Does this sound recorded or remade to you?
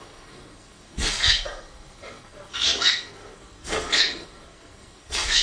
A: remade